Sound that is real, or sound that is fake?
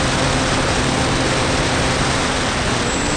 real